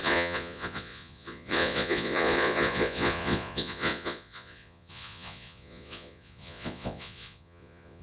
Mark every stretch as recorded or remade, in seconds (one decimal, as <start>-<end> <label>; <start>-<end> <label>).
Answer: 0.0-8.0 remade